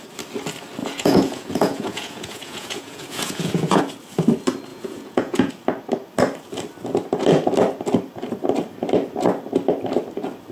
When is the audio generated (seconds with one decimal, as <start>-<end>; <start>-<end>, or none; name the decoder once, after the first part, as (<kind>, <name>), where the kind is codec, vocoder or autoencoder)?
0.8-3.8 (vocoder, Vocos); 4.7-5.5